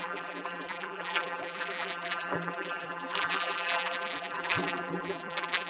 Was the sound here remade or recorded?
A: remade